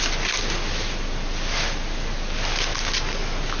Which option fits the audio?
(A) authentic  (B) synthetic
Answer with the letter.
A